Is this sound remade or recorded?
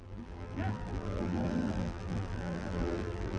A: remade